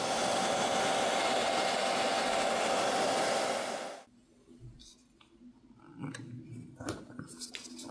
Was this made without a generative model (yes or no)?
yes